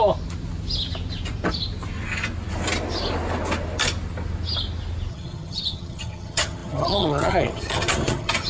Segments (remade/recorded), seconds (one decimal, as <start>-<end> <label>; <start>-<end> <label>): 0.0-5.1 recorded; 5.1-8.5 remade